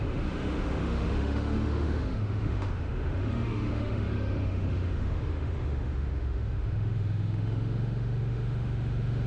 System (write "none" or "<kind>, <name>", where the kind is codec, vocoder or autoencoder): autoencoder, DAC-VAE